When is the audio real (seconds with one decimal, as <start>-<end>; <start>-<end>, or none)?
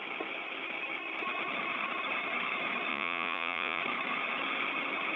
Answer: 0.0-2.9; 3.8-5.2